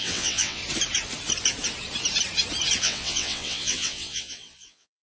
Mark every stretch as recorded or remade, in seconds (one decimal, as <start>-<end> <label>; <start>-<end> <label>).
0.0-0.6 remade; 0.6-2.8 recorded; 2.8-5.0 remade